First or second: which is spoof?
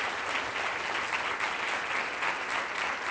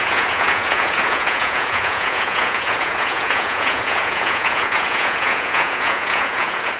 second